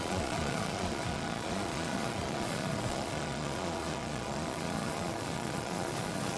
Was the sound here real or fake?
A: fake